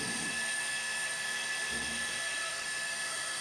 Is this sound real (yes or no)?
no